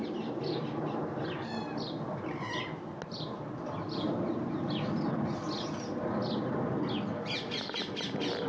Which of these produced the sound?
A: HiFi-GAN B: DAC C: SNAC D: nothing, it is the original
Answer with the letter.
D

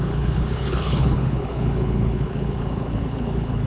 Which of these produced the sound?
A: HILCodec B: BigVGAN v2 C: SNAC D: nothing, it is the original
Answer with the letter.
A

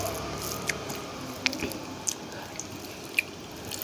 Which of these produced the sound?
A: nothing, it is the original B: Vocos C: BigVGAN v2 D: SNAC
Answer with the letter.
A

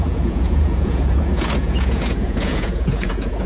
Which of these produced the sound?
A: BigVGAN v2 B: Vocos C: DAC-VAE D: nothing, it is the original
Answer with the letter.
B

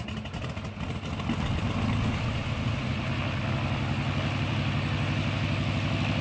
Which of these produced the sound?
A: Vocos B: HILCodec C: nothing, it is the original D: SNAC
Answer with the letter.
C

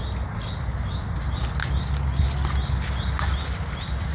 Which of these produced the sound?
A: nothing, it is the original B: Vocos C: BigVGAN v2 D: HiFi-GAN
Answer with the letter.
A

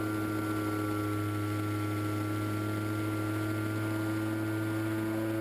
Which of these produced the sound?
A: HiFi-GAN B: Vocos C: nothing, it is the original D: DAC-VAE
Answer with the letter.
C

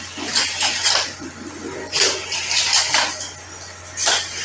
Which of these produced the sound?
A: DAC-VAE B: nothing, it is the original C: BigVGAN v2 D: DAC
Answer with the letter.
C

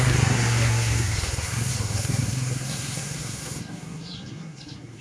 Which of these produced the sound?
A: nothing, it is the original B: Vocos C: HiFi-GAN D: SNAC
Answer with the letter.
D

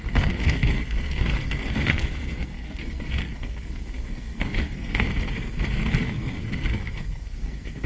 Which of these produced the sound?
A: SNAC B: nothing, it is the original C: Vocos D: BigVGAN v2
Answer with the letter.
A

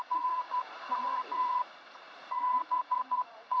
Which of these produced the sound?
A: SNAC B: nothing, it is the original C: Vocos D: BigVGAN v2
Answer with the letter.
C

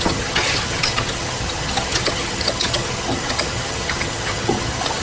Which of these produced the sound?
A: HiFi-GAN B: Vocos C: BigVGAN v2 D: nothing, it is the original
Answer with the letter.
A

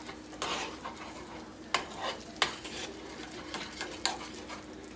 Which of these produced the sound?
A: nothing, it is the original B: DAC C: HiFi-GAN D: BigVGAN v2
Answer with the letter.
A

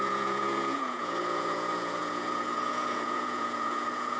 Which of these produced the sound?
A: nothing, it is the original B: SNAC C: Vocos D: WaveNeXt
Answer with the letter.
C